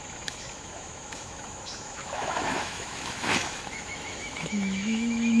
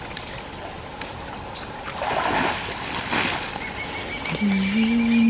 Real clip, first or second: second